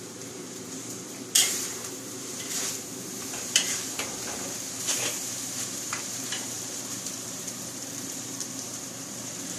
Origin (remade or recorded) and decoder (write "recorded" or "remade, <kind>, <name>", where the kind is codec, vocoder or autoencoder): remade, vocoder, BigVGAN v2